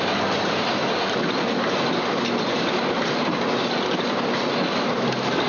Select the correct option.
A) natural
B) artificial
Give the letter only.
A